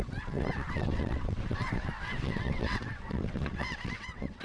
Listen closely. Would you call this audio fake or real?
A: fake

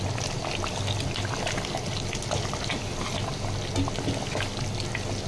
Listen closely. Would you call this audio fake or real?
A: real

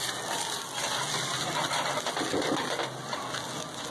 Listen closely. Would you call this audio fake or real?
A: real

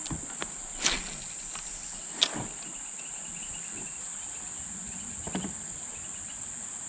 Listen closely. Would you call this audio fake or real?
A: real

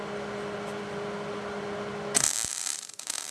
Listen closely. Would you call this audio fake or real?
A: real